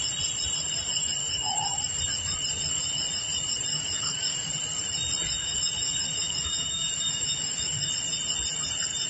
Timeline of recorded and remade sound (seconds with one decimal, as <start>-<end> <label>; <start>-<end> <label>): 0.0-1.2 recorded; 1.2-2.0 remade; 2.0-3.7 recorded; 3.7-4.5 remade; 4.5-5.4 recorded; 5.4-7.9 remade; 7.9-9.1 recorded